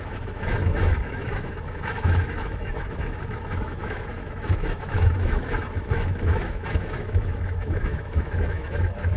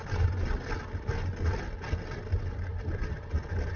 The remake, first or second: first